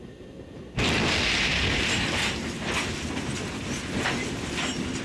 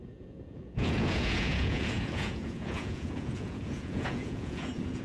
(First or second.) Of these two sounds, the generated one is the second